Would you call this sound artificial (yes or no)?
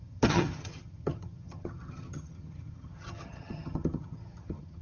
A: yes